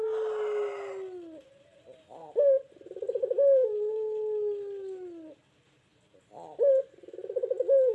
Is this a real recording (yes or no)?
yes